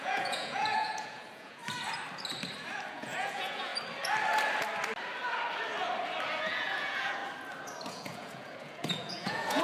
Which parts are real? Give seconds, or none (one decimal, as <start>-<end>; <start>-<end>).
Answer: 1.6-2.9; 3.7-6.4; 7.2-7.9